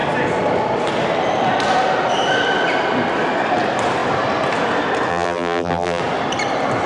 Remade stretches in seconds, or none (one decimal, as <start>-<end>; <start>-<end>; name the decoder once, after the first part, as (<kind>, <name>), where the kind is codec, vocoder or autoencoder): 5.1-6.0 (vocoder, BigVGAN v2)